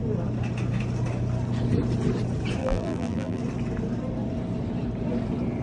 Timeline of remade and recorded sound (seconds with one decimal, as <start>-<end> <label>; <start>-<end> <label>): 0.0-2.6 recorded; 2.6-3.4 remade; 3.4-5.6 recorded